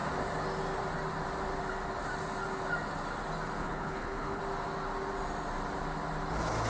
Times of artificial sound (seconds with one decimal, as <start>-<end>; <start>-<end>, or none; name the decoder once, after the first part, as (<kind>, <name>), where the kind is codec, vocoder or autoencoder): 3.6-4.4 (codec, HILCodec)